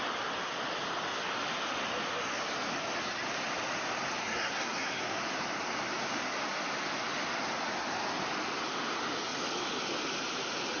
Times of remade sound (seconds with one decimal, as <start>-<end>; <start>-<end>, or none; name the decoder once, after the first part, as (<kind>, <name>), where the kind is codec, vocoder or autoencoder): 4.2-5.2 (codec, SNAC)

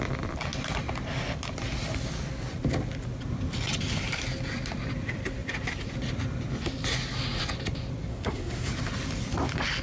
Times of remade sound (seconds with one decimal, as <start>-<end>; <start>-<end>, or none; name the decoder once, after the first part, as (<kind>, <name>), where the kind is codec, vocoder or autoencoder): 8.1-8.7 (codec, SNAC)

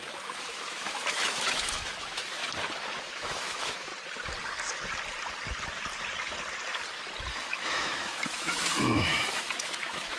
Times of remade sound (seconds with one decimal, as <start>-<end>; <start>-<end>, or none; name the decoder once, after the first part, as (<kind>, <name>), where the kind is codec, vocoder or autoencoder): 0.0-2.4 (autoencoder, DAC-VAE); 3.0-3.9; 7.3-10.2

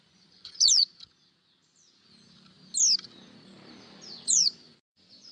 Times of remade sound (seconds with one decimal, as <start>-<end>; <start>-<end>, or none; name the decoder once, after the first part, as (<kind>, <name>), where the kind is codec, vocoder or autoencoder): 0.0-0.9 (vocoder, Vocos); 4.1-5.3

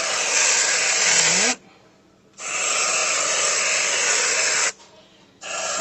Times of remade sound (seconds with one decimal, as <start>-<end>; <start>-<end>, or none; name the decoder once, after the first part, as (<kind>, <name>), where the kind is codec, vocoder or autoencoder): 3.0-5.3 (vocoder, BigVGAN v2)

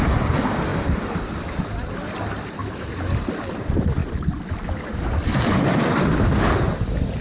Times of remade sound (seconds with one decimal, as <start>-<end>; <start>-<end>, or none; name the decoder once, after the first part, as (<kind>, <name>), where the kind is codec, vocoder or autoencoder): 2.6-3.1 (autoencoder, DAC-VAE)

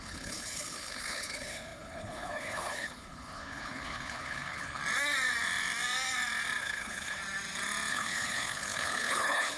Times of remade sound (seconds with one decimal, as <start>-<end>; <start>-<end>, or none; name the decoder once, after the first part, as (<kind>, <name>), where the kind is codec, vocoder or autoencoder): 0.0-4.8 (codec, HILCodec); 6.6-7.2; 7.9-9.6